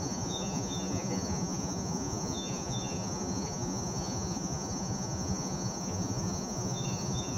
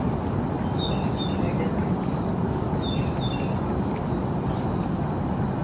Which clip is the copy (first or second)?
first